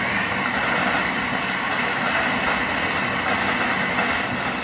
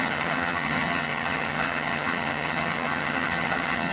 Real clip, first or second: first